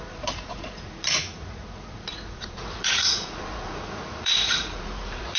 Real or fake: fake